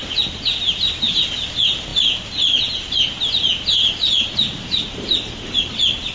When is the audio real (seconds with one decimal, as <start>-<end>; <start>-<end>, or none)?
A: 0.0-6.1